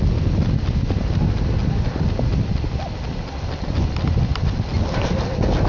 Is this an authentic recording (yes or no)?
yes